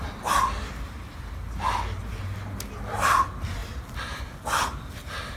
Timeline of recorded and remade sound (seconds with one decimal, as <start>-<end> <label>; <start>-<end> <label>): 0.0-5.4 recorded